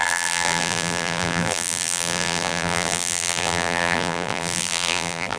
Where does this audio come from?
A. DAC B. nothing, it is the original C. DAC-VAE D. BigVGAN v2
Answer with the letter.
D